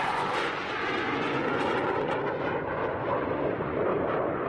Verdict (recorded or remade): remade